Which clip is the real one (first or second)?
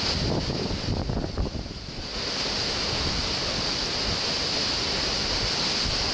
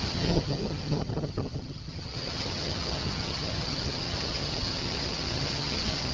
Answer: first